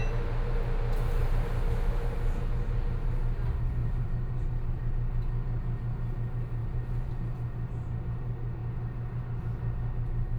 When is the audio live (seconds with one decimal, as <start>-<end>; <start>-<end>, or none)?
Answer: 0.0-3.8; 4.9-6.6; 7.1-10.4